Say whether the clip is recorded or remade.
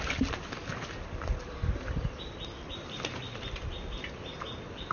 recorded